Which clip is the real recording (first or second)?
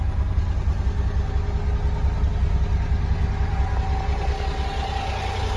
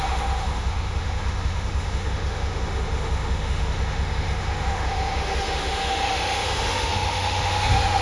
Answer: first